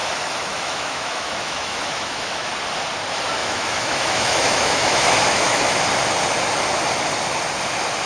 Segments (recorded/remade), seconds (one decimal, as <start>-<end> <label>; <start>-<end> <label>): 0.0-2.5 remade; 2.5-3.4 recorded; 3.4-5.8 remade; 5.8-8.1 recorded